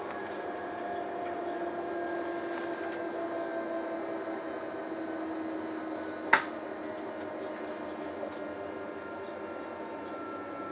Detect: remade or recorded recorded